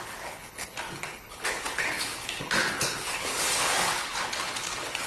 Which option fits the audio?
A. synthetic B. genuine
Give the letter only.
A